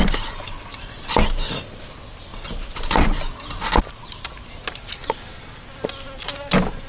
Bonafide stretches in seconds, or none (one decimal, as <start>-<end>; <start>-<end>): 0.0-6.9